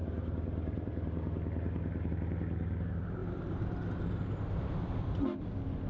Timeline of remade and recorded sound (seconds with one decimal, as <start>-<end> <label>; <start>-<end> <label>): 0.0-2.1 remade; 2.1-5.9 recorded